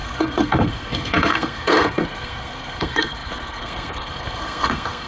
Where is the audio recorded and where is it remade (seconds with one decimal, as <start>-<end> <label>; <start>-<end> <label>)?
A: 0.0-5.1 remade